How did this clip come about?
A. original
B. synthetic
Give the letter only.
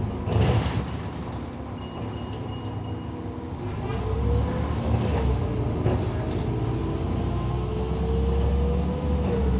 A